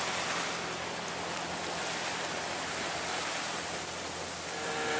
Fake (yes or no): no